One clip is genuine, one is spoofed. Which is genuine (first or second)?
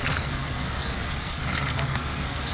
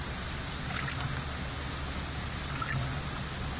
second